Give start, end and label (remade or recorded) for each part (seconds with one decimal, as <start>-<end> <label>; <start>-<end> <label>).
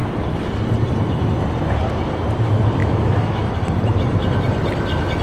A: 0.0-2.8 recorded; 2.8-3.5 remade; 3.5-5.2 recorded